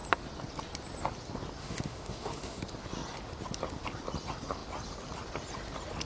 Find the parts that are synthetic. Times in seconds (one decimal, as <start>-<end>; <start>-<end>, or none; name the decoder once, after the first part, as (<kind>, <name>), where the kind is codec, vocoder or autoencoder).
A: 1.6-2.6 (autoencoder, DAC-VAE)